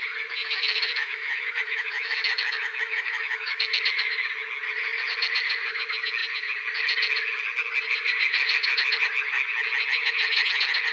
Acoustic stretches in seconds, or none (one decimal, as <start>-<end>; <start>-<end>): 0.0-0.4; 3.8-10.9